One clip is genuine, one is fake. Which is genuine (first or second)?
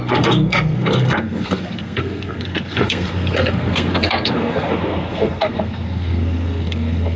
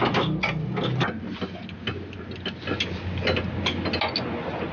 second